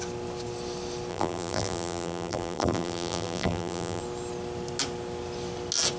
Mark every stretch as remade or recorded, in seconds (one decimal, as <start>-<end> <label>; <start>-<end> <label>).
0.0-1.1 recorded; 1.1-4.0 remade; 4.0-6.0 recorded